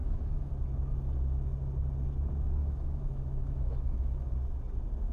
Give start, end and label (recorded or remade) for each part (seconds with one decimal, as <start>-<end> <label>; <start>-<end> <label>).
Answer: 0.0-0.5 remade; 0.5-2.6 recorded; 2.6-4.3 remade; 4.3-5.1 recorded